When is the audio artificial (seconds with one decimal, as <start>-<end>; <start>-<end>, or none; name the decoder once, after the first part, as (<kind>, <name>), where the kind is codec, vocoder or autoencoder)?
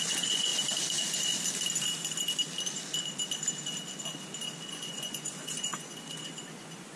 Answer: 0.0-0.5 (vocoder, Vocos); 4.7-7.0